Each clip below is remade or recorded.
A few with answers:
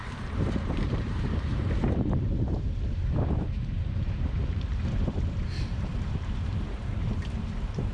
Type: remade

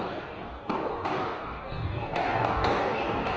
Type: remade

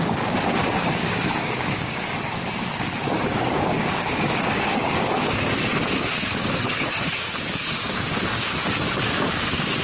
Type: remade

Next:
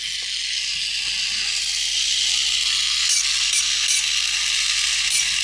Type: recorded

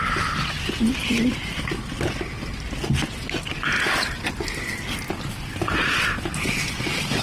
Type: recorded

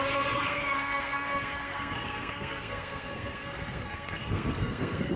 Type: remade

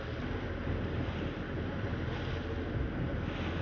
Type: recorded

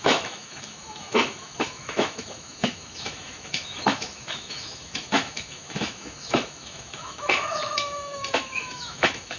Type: remade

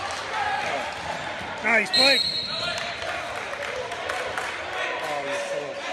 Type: recorded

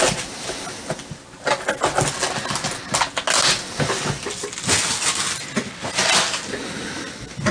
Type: recorded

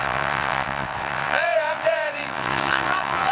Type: remade